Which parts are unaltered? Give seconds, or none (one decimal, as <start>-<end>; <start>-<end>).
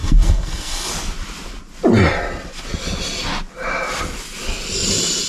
0.9-5.3